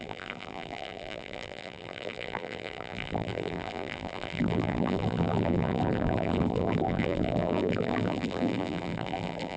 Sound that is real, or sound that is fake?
fake